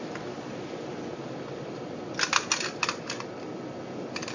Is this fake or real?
real